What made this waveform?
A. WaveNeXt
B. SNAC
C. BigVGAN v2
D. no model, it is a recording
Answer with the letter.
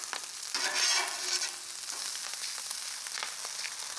D